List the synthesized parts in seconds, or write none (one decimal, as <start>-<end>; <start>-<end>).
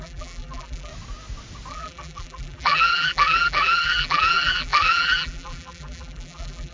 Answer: 0.0-0.9; 1.7-6.7